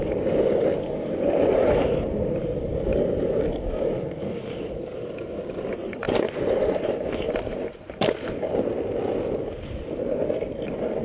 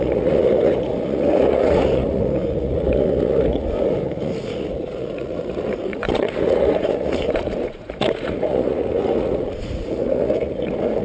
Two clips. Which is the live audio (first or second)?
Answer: first